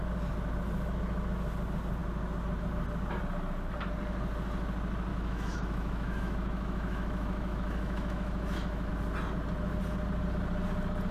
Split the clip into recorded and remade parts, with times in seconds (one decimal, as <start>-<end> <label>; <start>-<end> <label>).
0.0-5.1 recorded; 5.1-8.9 remade; 8.9-11.1 recorded